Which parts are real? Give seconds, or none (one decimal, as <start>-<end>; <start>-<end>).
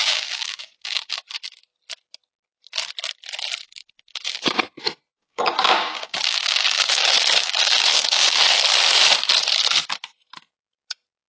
1.2-3.6; 4.6-5.1; 8.4-11.3